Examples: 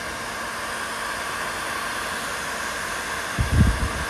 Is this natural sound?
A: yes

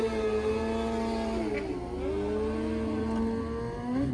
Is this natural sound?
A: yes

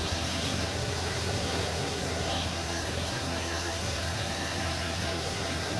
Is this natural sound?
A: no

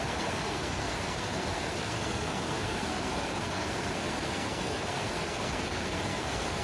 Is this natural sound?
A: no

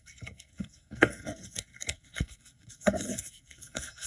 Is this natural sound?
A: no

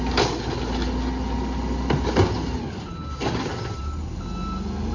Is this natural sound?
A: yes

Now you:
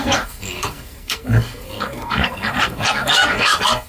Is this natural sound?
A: no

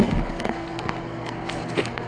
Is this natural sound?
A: no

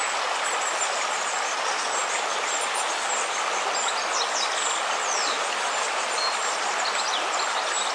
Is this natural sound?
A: yes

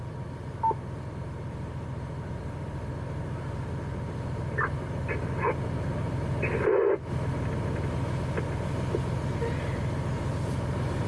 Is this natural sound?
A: yes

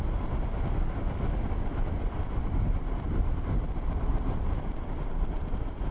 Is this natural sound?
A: yes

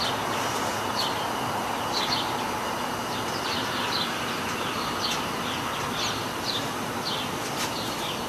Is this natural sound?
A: yes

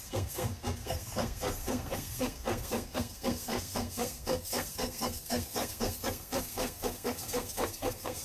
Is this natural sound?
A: no